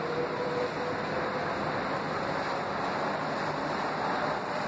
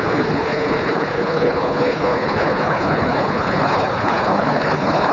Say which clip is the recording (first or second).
first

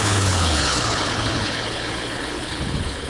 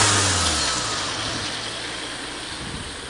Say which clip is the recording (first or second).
second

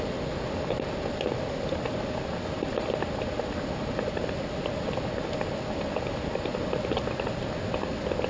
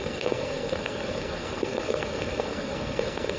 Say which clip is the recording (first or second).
first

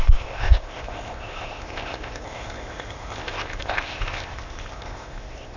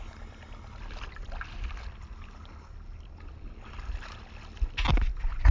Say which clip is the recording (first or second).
second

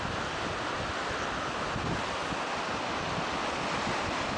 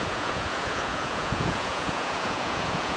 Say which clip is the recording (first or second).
first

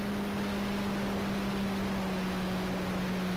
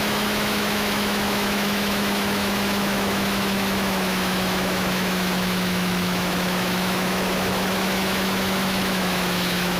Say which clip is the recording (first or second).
first